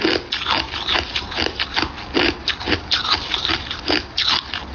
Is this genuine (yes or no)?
yes